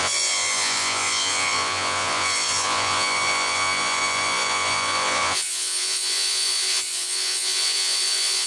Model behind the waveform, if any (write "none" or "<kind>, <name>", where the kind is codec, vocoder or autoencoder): vocoder, Vocos